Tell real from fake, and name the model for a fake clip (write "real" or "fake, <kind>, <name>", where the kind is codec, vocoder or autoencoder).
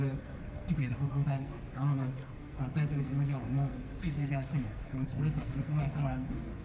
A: fake, codec, SNAC